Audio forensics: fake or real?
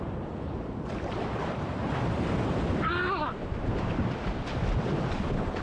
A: real